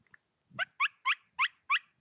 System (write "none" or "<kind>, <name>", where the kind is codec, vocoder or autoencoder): none